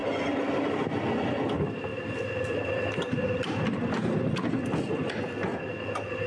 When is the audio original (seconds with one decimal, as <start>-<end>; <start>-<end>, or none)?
1.0-1.9; 4.3-6.3